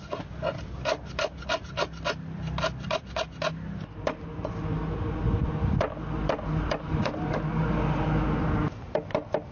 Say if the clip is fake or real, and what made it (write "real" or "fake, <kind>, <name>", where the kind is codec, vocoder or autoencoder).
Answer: real